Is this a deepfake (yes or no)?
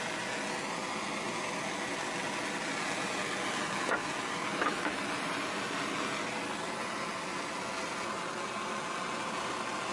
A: no